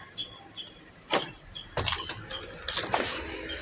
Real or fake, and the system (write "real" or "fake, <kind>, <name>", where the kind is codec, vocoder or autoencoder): real